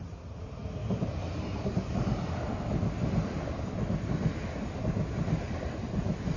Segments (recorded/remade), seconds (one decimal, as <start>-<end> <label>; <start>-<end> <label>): 0.0-6.4 recorded